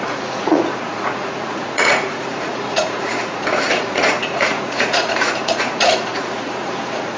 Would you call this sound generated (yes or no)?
yes